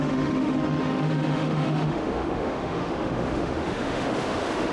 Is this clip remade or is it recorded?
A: remade